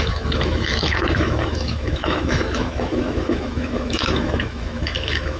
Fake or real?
fake